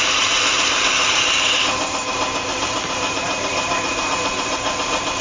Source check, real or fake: fake